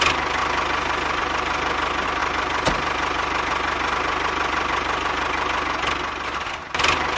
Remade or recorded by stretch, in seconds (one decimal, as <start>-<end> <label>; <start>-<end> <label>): 0.0-7.2 recorded